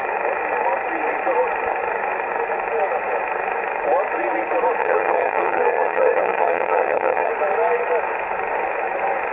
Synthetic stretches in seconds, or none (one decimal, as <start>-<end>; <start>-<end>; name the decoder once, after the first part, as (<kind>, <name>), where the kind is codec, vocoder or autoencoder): 4.8-7.3 (vocoder, HiFi-GAN)